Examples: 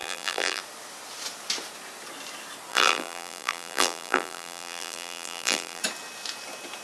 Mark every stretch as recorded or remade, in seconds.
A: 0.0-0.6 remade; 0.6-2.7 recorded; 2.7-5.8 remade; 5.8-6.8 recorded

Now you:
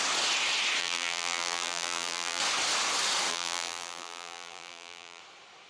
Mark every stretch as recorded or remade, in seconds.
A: 0.0-0.8 recorded; 0.8-2.4 remade; 2.4-3.3 recorded; 3.3-5.2 remade; 5.2-5.7 recorded

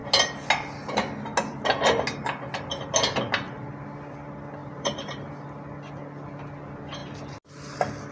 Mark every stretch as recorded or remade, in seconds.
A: 0.0-4.6 recorded; 4.6-5.3 remade; 5.3-8.1 recorded

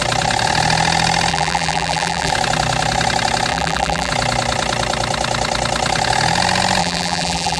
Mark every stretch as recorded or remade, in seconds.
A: 0.0-1.3 recorded; 1.3-2.3 remade; 2.3-3.5 recorded; 3.5-4.1 remade; 4.1-6.8 recorded; 6.8-7.6 remade

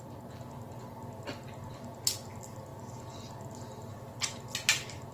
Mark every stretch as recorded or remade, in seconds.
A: 0.0-5.1 recorded

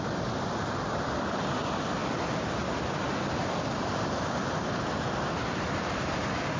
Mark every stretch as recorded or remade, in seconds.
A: 0.0-2.0 recorded; 2.0-6.0 remade; 6.0-6.6 recorded

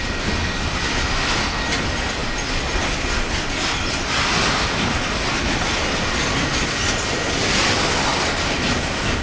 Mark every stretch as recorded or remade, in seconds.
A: 0.0-9.2 recorded

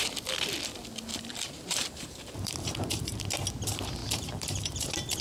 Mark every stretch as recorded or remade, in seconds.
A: 0.0-1.1 recorded; 1.1-3.2 remade; 3.2-4.0 recorded; 4.0-5.2 remade